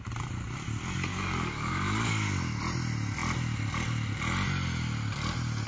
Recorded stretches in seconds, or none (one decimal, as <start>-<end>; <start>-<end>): 0.0-1.1; 2.6-5.7